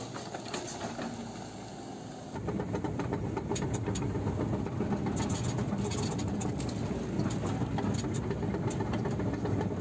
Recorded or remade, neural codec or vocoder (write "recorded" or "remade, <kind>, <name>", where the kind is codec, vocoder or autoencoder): recorded